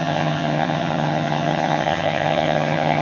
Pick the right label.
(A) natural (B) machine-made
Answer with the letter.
B